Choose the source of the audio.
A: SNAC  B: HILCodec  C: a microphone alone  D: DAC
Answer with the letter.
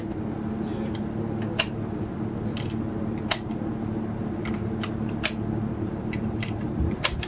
C